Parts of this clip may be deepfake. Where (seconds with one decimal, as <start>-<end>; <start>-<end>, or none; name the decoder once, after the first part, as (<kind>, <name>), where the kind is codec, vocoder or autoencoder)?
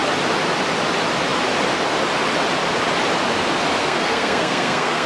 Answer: 3.8-5.1 (codec, SNAC)